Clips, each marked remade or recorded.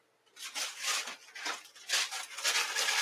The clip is recorded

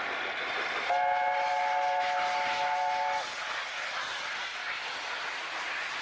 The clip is recorded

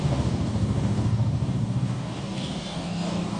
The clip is remade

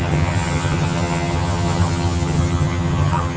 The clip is remade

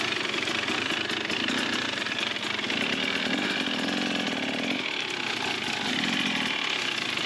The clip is recorded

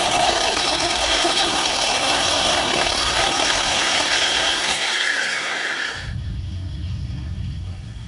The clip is remade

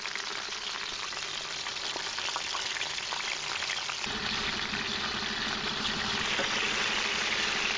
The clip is recorded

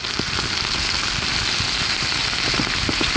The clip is recorded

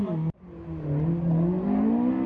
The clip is recorded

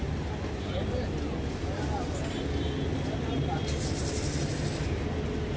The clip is recorded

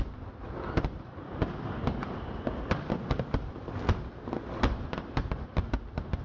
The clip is recorded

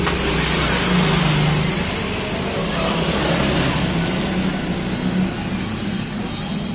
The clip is recorded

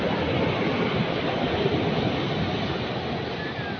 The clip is recorded